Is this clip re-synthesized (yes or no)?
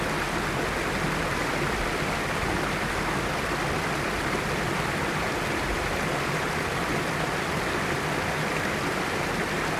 no